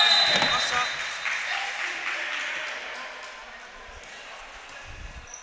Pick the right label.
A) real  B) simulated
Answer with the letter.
A